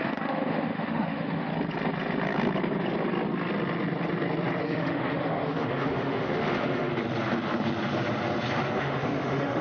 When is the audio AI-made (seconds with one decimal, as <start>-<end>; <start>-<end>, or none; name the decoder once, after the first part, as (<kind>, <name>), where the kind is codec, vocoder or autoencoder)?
0.0-1.5 (autoencoder, DAC-VAE); 4.6-6.9; 8.8-9.6